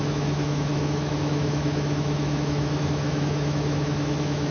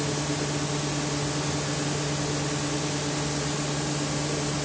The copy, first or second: first